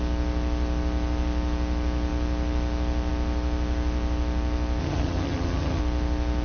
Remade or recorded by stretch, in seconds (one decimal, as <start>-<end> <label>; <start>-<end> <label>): 0.0-4.8 recorded; 4.8-5.8 remade; 5.8-6.4 recorded